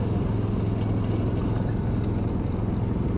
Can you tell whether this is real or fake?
real